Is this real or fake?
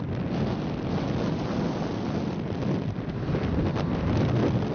real